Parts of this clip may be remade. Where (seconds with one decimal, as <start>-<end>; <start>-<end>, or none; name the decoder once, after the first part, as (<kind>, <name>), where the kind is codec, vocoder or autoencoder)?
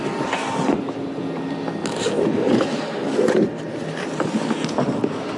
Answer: none